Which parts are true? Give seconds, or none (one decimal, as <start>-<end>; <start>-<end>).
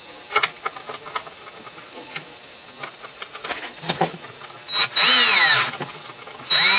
0.0-2.9; 4.5-6.8